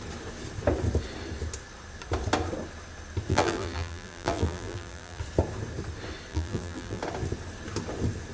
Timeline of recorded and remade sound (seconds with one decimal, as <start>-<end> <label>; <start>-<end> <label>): 0.0-3.3 recorded; 3.3-5.2 remade; 5.2-6.3 recorded; 6.3-7.0 remade; 7.0-8.3 recorded